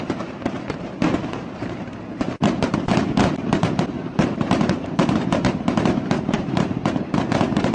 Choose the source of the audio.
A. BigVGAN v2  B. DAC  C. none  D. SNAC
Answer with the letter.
A